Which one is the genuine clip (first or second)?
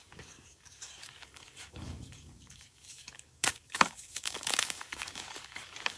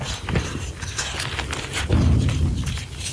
second